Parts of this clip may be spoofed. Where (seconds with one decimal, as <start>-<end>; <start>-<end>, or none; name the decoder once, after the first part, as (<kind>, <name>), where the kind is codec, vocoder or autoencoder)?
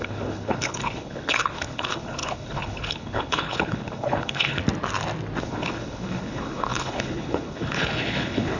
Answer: 0.0-4.6 (codec, HILCodec); 5.4-8.6